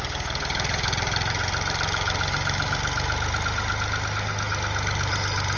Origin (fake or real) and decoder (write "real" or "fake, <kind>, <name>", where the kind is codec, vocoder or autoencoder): real